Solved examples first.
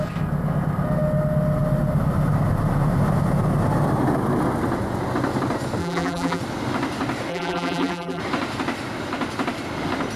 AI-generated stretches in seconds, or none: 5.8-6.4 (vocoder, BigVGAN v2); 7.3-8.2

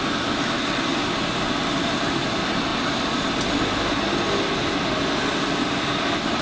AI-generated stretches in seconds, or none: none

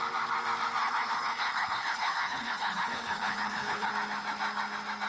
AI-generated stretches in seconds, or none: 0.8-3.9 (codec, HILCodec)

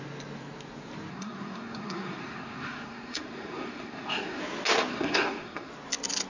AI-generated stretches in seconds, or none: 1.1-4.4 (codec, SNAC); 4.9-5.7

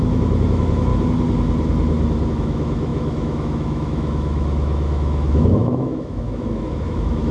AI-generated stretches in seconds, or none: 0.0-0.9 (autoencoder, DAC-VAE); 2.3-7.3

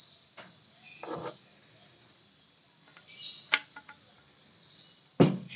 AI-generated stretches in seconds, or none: 1.5-2.1 (vocoder, BigVGAN v2); 3.6-5.6

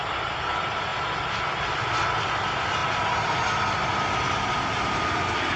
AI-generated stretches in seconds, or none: 0.0-0.9 (vocoder, BigVGAN v2); 2.2-2.8